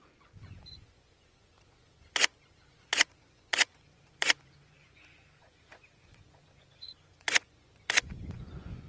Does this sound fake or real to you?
fake